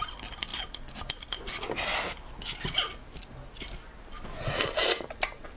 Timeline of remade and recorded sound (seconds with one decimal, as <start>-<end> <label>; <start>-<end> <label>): 0.0-5.6 recorded